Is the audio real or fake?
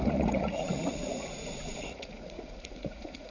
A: fake